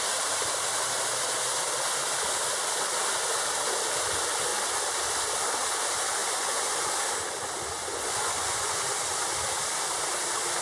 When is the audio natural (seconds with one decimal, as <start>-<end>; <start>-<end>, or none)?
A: 0.0-6.2; 7.0-7.9; 8.8-10.6